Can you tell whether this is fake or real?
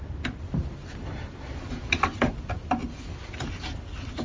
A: fake